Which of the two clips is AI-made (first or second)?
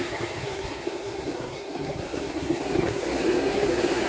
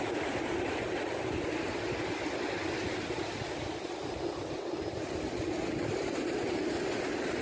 first